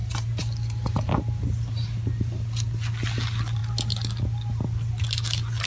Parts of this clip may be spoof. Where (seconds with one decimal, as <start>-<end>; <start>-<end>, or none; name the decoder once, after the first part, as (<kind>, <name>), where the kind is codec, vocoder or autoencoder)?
none